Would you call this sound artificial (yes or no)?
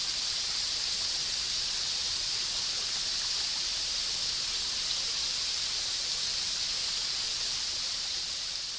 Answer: no